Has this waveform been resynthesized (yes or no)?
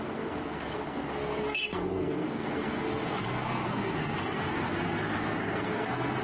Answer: yes